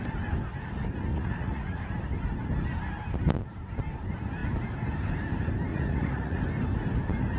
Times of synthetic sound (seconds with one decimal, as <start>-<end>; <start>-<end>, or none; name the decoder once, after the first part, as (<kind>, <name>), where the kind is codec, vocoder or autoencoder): 1.1-1.8 (vocoder, Vocos); 5.7-6.4